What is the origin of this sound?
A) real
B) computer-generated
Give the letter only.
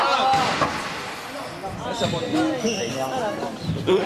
A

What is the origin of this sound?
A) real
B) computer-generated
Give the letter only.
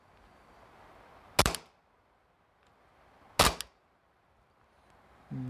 A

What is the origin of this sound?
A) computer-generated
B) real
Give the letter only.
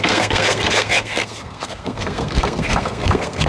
A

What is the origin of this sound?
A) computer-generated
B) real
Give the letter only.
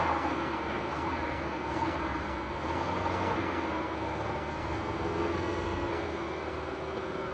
A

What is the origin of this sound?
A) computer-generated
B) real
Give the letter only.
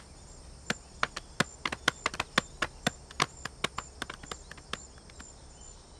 B